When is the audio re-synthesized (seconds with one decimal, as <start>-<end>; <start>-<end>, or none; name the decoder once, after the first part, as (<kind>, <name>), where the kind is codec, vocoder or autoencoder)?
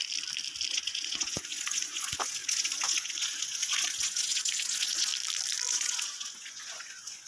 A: 0.7-5.1 (vocoder, Vocos); 5.7-7.3